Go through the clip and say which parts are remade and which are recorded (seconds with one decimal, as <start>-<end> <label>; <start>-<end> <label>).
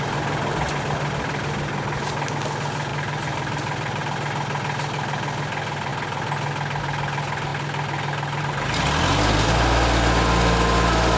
0.0-2.9 recorded; 2.9-4.0 remade; 4.0-11.2 recorded